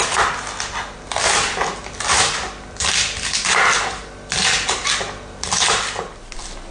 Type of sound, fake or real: real